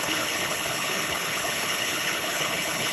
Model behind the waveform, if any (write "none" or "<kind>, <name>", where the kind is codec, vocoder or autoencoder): codec, HILCodec